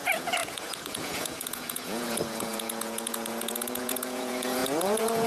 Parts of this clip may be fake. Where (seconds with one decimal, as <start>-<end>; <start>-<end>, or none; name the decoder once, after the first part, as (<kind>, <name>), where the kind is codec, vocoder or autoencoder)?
0.0-5.3 (vocoder, Vocos)